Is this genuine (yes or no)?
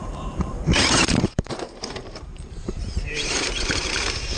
no